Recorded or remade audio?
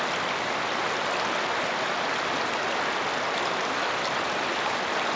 recorded